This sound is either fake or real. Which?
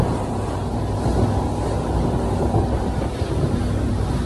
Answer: real